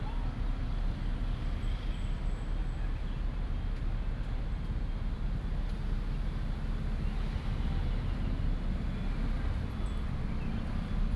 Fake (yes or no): no